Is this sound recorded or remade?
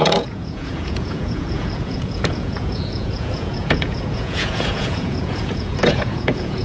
remade